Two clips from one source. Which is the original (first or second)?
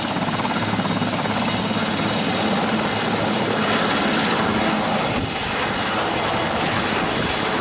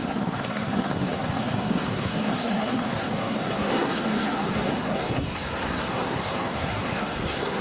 first